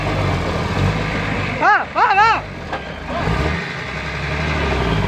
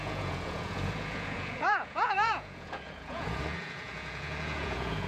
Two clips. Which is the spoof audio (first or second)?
second